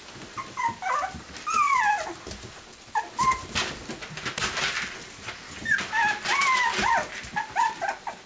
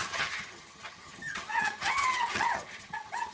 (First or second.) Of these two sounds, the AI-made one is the second